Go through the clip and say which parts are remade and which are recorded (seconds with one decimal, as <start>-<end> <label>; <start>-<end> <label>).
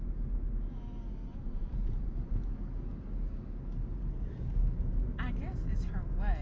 0.0-6.4 recorded